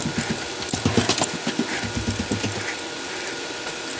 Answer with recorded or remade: recorded